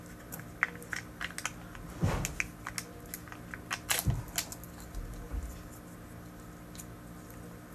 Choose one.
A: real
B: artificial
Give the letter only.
A